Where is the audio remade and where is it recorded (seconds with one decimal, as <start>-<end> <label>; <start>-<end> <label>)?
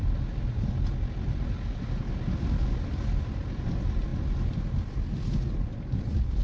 0.0-6.4 recorded